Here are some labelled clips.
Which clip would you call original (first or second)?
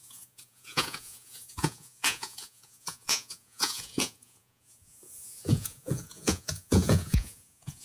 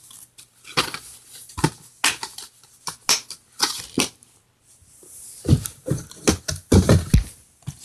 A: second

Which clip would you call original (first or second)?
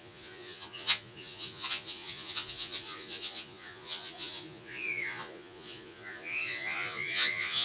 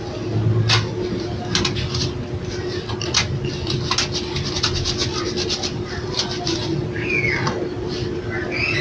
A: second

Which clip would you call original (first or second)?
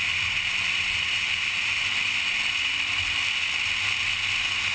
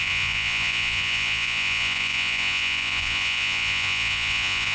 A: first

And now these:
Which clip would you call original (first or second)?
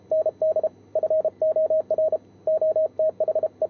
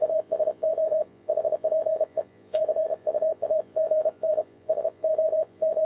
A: first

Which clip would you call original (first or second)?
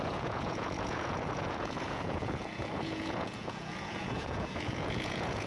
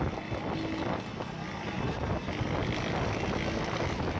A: second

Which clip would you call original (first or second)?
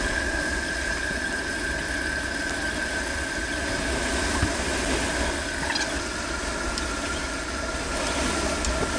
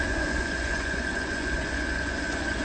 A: first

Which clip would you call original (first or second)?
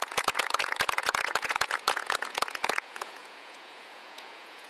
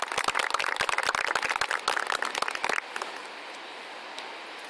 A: second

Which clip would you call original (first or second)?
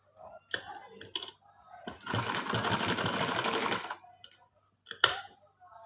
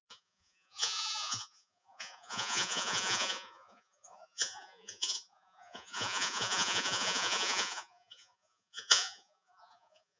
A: first